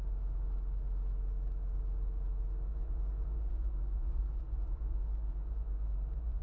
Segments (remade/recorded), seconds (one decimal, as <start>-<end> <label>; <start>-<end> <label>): 0.0-2.7 recorded; 2.7-6.4 remade